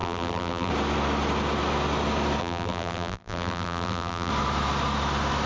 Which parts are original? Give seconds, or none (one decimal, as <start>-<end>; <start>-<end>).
0.7-2.4; 4.3-5.5